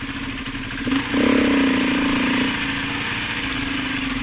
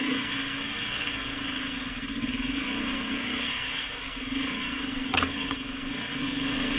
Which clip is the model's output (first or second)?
second